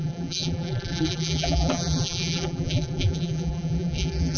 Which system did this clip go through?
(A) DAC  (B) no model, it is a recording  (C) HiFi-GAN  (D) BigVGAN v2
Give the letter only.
D